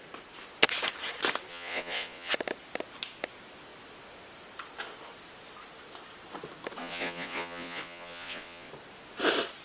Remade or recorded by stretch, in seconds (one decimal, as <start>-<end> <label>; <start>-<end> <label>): 0.0-1.5 recorded; 1.5-2.3 remade; 2.3-6.8 recorded; 6.8-8.7 remade; 8.7-9.6 recorded